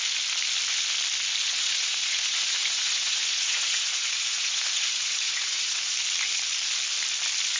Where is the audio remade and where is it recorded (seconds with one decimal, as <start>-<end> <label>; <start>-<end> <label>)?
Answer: 0.0-1.4 recorded; 1.4-5.8 remade; 5.8-7.6 recorded